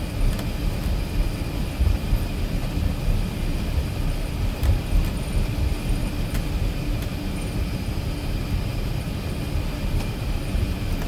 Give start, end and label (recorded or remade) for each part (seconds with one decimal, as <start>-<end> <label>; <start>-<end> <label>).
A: 0.0-11.1 recorded